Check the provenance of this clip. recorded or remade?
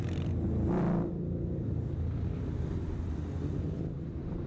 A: recorded